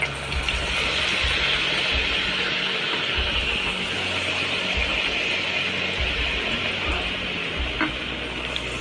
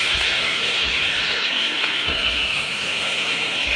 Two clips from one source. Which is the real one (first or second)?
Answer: first